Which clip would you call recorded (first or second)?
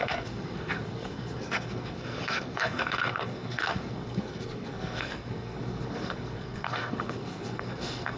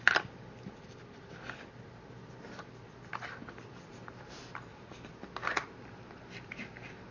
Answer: second